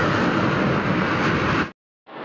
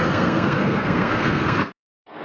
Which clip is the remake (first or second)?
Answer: second